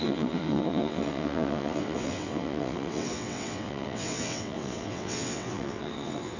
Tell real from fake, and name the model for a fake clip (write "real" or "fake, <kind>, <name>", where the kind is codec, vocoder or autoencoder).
fake, vocoder, WaveNeXt